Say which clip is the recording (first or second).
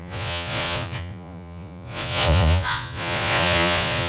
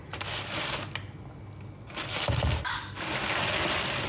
second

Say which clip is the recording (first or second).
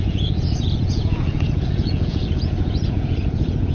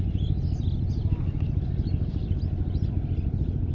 second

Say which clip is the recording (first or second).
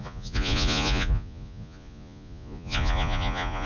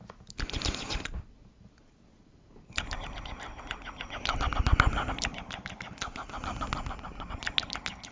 second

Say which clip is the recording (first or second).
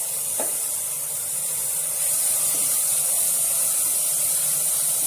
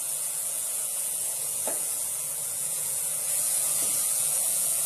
first